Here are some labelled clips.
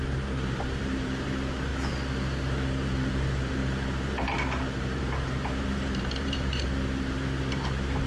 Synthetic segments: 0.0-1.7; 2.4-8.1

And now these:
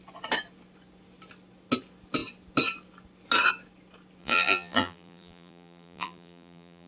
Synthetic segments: 4.2-6.9